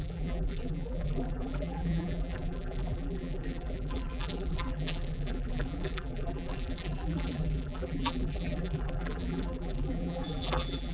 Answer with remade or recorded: remade